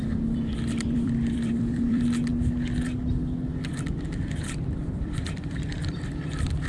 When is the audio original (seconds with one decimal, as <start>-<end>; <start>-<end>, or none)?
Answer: 2.3-3.6